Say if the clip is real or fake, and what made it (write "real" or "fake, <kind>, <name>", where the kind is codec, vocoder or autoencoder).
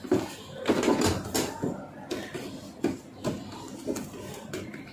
real